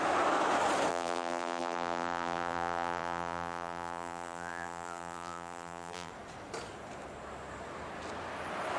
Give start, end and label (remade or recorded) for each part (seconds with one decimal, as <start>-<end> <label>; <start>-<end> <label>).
0.0-0.9 recorded; 0.9-6.1 remade; 6.1-8.8 recorded